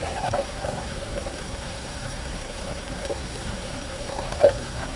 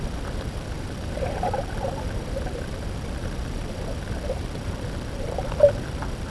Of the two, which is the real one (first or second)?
second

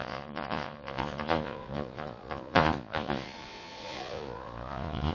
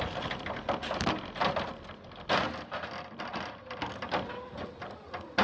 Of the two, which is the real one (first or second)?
second